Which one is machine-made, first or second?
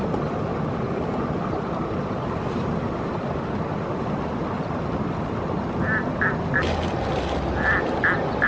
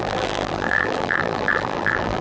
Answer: second